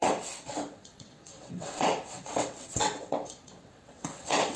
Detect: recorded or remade remade